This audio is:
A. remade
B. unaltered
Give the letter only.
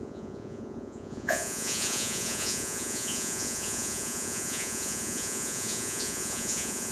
A